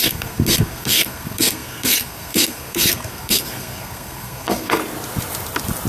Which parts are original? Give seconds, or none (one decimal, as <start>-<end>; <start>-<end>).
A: 4.8-5.9